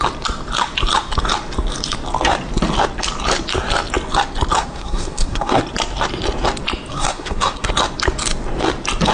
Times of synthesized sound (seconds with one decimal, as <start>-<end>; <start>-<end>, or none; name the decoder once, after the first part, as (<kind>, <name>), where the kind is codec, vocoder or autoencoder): 4.6-5.6 (codec, SNAC); 6.9-7.7